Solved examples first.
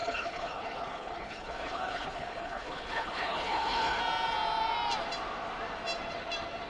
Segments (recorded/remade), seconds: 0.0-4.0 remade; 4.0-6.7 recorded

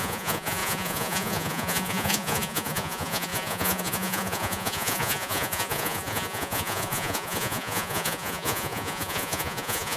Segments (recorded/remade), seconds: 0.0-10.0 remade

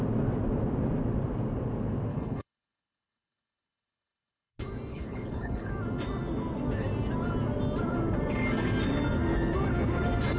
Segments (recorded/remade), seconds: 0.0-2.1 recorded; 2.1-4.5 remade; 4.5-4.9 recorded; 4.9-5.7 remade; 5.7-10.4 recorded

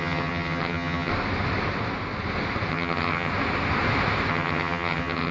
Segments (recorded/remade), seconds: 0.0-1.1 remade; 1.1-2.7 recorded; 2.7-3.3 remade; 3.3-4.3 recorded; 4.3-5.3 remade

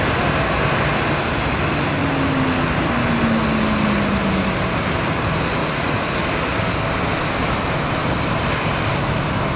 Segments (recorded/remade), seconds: 0.0-5.6 recorded; 5.6-6.2 remade; 6.2-9.6 recorded

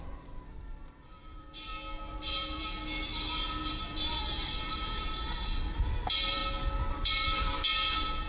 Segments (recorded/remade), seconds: 0.0-1.7 remade; 1.7-2.2 recorded; 2.2-6.4 remade; 6.4-6.9 recorded; 6.9-8.3 remade